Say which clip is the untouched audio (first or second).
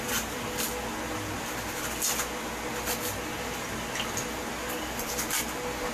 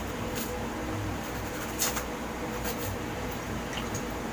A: first